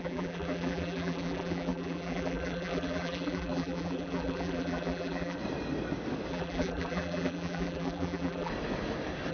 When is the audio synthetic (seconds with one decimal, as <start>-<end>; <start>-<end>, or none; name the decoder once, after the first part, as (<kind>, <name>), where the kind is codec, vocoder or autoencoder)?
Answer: 0.0-5.4 (vocoder, BigVGAN v2); 6.3-8.5